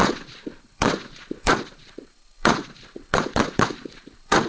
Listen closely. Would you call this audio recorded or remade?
remade